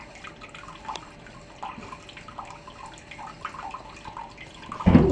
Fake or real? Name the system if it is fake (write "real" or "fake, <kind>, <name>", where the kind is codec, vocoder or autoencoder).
real